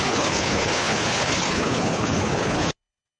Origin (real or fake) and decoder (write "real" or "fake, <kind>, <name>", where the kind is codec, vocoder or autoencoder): fake, codec, HILCodec